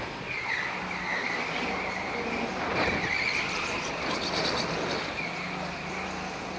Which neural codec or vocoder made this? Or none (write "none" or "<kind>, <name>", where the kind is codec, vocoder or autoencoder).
none